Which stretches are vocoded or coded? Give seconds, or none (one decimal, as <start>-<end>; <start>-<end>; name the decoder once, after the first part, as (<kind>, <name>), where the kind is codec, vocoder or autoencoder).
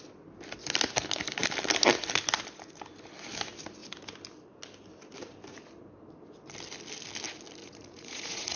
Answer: 7.6-8.6 (vocoder, Vocos)